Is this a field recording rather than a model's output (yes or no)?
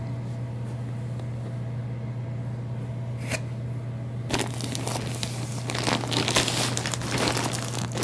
yes